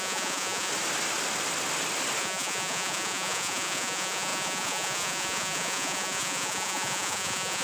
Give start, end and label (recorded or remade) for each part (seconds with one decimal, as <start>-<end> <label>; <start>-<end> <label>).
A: 0.0-0.7 remade; 0.7-2.2 recorded; 2.2-7.6 remade